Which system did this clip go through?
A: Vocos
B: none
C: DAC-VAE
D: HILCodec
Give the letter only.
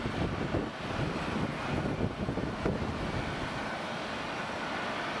B